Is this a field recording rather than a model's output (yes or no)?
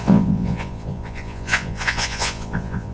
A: no